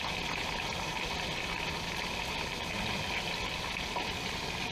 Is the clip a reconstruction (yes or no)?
no